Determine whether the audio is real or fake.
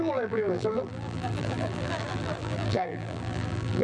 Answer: fake